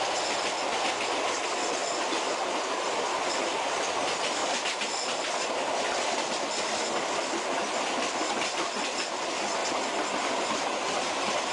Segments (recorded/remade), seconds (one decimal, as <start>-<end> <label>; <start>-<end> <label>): 0.0-11.5 recorded